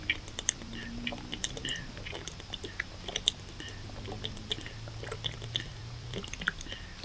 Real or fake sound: fake